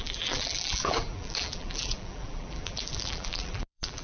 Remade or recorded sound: remade